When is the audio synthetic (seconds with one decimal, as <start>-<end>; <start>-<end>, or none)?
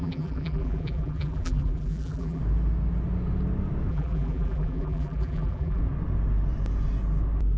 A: 0.0-2.4; 3.9-5.8